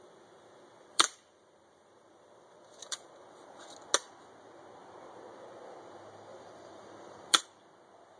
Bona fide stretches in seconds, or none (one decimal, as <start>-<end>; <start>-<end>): 0.0-0.9; 3.7-6.3; 7.4-8.2